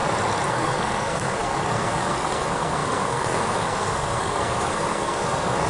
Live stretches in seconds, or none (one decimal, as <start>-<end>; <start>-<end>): 0.0-0.5